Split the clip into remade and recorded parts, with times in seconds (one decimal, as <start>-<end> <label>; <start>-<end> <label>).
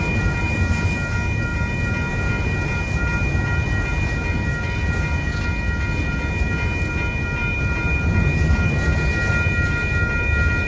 0.0-10.7 recorded